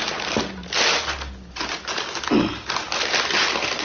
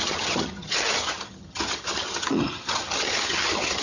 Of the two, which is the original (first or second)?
first